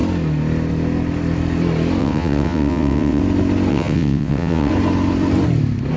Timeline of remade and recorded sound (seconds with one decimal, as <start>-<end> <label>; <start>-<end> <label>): 0.0-2.0 recorded; 2.0-3.2 remade; 3.2-3.7 recorded; 3.7-4.7 remade; 4.7-6.0 recorded